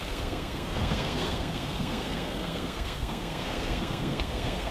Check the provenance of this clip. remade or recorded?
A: remade